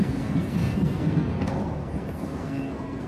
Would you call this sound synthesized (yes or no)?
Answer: yes